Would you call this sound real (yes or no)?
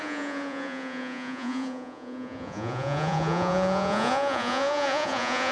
no